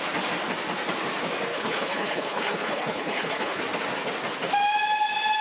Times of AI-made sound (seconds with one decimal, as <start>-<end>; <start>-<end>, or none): 1.5-3.6